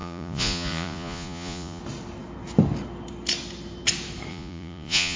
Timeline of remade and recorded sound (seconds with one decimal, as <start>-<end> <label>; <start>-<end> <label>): 0.0-1.8 remade; 1.8-4.3 recorded; 4.3-5.2 remade